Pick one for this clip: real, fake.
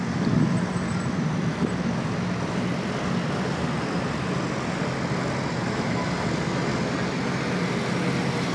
real